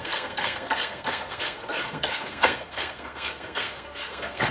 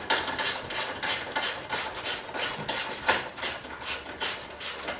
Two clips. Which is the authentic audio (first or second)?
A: second